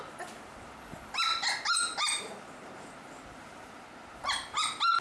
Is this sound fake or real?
real